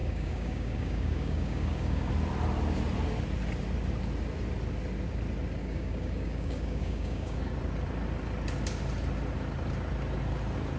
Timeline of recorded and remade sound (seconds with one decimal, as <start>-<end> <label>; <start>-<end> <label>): 0.0-2.1 remade; 2.1-5.6 recorded; 5.6-7.4 remade; 7.4-10.8 recorded